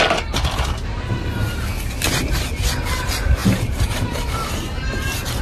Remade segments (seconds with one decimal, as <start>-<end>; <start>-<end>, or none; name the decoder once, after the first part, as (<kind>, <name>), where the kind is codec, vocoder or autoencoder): 0.9-1.6 (vocoder, BigVGAN v2); 3.4-4.3